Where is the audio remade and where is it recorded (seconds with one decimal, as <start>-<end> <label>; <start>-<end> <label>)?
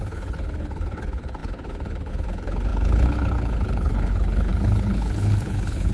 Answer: 0.0-5.9 remade